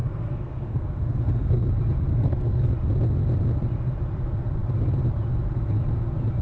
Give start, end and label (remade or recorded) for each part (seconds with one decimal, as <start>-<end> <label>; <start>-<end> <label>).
0.0-1.7 remade; 1.7-2.1 recorded; 2.1-2.7 remade; 2.7-6.4 recorded